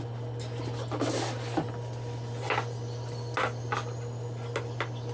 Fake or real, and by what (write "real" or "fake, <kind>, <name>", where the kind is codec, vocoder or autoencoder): real